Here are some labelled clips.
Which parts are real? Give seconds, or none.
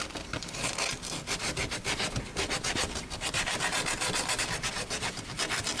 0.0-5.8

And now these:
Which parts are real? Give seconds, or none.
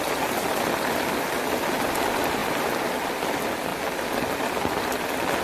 0.0-5.4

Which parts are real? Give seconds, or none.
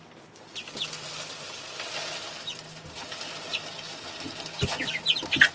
0.0-5.5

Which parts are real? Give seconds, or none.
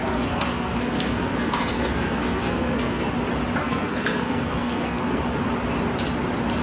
3.1-3.6; 5.2-6.6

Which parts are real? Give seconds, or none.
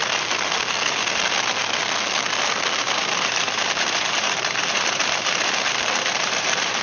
0.0-2.8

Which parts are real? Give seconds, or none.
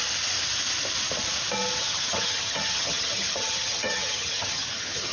0.0-1.8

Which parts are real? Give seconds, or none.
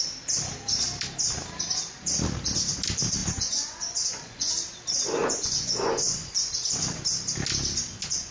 0.0-3.2; 4.5-5.2; 6.5-8.3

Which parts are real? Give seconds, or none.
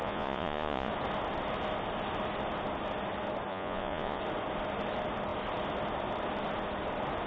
0.9-3.5; 4.2-7.3